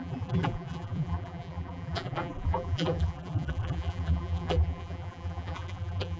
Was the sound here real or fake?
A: fake